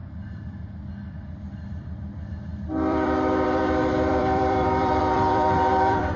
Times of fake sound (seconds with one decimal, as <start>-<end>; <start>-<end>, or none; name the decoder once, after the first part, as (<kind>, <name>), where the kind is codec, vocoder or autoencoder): 1.1-6.2 (vocoder, BigVGAN v2)